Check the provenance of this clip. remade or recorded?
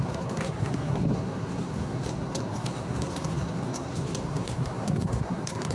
remade